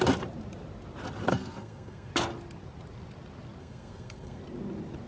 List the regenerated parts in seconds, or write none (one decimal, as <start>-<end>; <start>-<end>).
1.3-2.1; 3.6-4.4